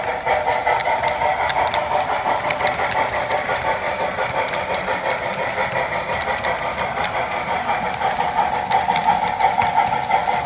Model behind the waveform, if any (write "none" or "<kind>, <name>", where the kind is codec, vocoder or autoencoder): none